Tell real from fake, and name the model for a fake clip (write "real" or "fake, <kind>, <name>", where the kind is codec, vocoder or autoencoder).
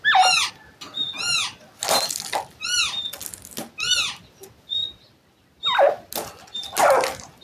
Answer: real